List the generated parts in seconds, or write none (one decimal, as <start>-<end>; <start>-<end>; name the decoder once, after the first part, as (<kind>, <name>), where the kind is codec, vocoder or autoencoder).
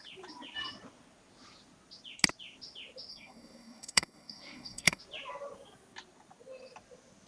3.1-5.0 (codec, SNAC)